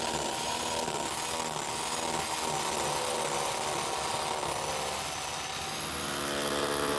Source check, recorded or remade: recorded